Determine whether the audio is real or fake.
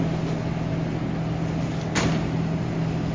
real